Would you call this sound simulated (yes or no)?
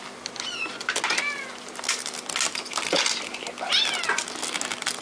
no